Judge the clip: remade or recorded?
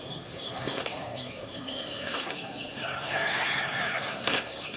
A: remade